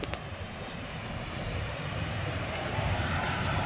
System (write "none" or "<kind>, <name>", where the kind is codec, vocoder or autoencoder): vocoder, BigVGAN v2